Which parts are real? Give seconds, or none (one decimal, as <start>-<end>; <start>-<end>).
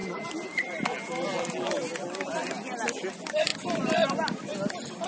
0.0-5.1